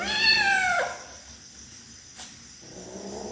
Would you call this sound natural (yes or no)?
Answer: yes